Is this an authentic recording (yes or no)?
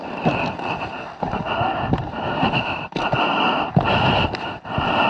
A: no